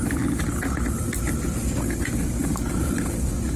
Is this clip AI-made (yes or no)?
no